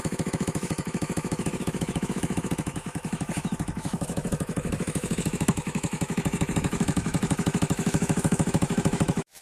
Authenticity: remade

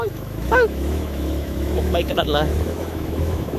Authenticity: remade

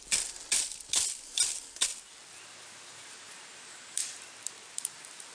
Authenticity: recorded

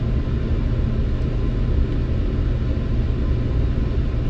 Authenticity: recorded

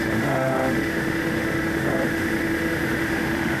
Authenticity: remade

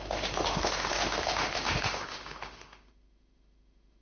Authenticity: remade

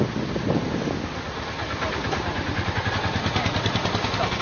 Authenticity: recorded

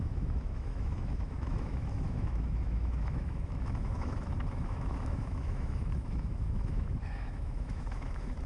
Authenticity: remade